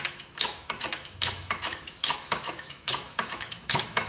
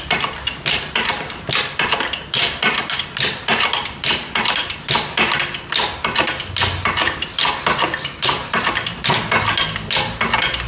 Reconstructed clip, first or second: first